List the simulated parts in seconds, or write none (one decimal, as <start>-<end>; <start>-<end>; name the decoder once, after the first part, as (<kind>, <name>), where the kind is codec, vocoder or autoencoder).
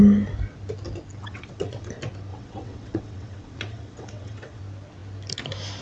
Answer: 1.2-1.9 (vocoder, WaveNeXt); 2.3-4.6